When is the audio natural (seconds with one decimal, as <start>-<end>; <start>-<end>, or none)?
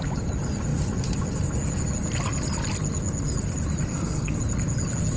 0.0-3.9; 4.4-5.2